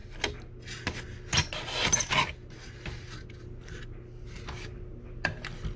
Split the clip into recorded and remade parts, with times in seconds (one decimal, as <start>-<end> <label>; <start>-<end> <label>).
0.0-5.8 recorded